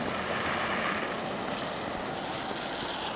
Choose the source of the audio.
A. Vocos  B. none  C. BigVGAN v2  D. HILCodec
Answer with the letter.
B